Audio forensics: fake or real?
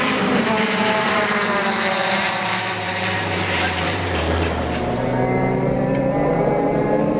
fake